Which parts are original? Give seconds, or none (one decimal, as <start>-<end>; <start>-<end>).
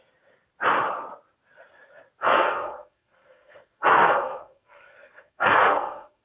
0.0-2.2